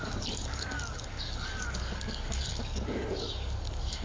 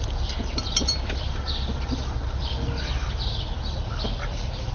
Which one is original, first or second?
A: second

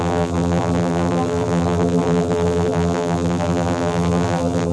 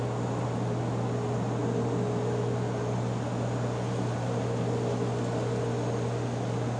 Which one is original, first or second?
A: second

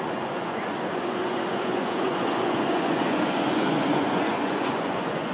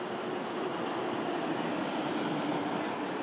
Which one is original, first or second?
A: second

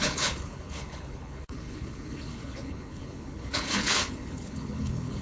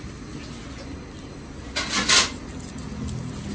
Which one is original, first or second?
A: second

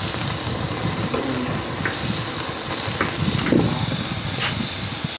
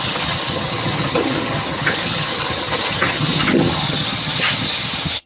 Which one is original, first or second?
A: first